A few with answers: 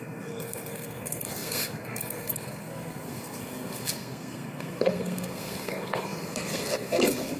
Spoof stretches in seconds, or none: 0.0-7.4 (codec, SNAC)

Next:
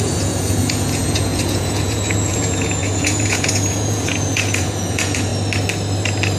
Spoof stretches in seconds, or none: 0.0-5.3 (vocoder, Vocos)

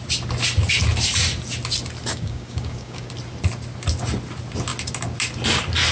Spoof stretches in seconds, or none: 2.1-3.1 (codec, DAC)